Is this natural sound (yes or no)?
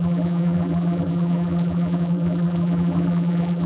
no